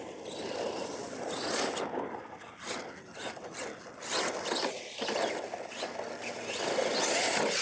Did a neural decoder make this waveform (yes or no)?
no